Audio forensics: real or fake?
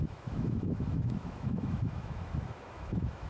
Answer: fake